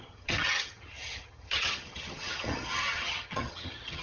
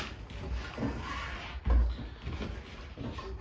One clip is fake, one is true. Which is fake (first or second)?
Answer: first